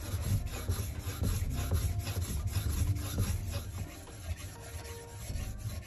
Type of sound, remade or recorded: recorded